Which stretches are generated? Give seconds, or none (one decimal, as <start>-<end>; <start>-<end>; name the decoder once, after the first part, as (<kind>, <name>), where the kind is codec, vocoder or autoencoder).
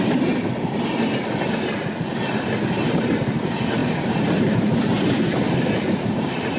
0.0-0.5 (vocoder, BigVGAN v2); 3.0-6.6